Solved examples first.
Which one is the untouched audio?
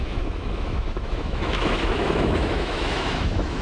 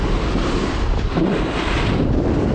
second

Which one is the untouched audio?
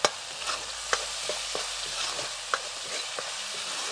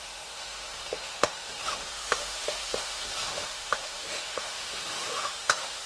first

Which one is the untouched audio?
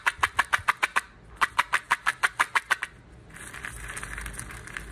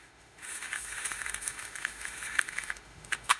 first